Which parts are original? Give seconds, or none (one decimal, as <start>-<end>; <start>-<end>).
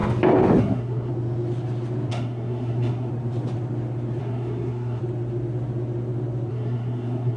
0.0-0.6; 1.1-2.1; 3.1-4.2; 5.0-6.5